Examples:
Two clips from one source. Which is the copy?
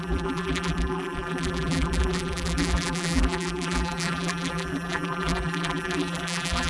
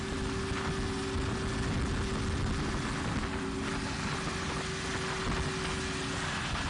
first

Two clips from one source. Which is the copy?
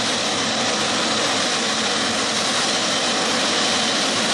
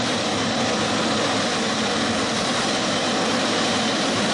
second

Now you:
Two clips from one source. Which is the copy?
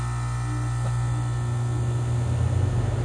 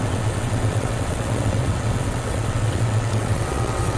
second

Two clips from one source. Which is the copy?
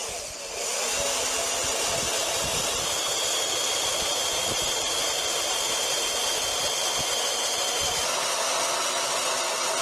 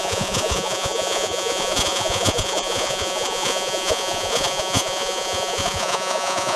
second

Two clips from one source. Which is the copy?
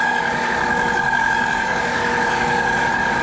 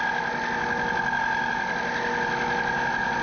first